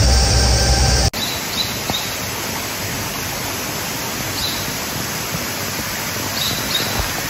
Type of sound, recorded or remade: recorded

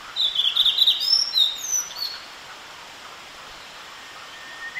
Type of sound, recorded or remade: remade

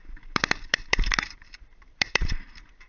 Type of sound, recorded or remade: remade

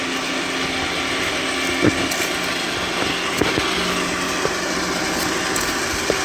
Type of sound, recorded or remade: recorded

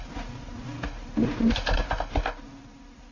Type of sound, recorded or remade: recorded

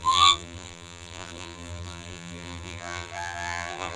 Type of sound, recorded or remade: remade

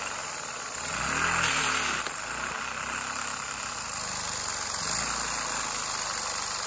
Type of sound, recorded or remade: recorded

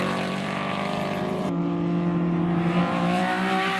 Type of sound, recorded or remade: remade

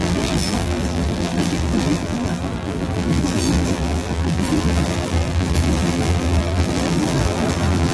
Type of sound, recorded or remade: remade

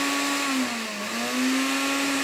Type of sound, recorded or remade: recorded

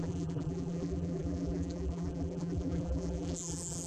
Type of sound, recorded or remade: remade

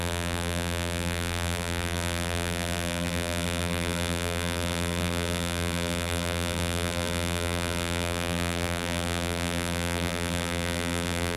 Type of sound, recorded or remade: remade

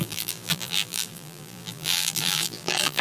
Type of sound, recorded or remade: remade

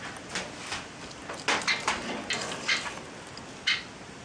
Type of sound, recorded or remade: recorded